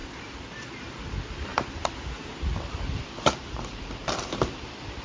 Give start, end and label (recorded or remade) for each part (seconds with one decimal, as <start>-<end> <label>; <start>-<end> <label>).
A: 0.0-0.7 remade; 0.7-1.5 recorded; 1.5-4.5 remade; 4.5-5.0 recorded